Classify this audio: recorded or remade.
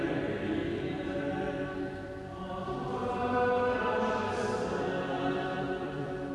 remade